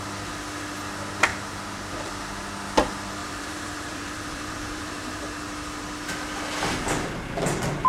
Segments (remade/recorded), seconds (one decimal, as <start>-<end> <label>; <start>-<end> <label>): 0.0-1.3 recorded; 1.3-2.1 remade; 2.1-3.2 recorded; 3.2-5.2 remade; 5.2-7.9 recorded